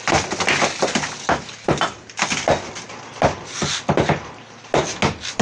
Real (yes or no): yes